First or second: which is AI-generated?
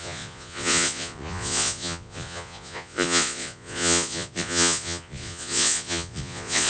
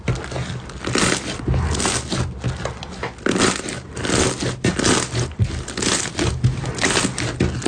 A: first